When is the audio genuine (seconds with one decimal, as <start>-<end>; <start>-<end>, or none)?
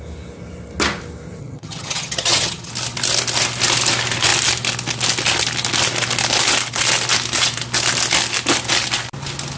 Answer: 0.0-1.4; 2.7-9.6